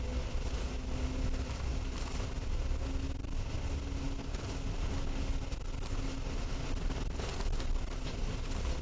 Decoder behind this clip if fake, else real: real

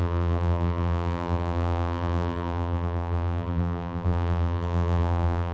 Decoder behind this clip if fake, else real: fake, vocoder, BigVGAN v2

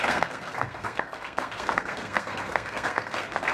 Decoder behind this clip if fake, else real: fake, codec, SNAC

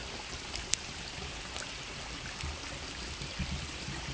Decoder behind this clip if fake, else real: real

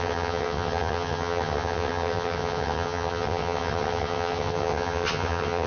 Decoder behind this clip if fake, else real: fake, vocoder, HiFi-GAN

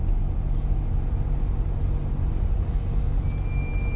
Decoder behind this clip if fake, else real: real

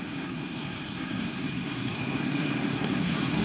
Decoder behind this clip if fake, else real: fake, codec, SNAC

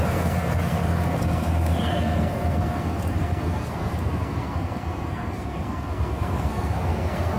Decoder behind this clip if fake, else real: fake, codec, SNAC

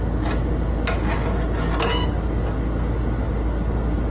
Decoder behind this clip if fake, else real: real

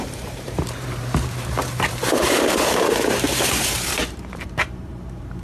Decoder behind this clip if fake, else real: fake, vocoder, BigVGAN v2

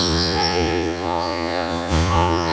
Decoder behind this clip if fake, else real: fake, vocoder, Vocos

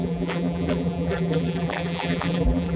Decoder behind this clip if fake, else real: fake, vocoder, BigVGAN v2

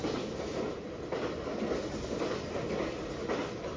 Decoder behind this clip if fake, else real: real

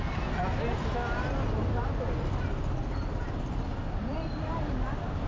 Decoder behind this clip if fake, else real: real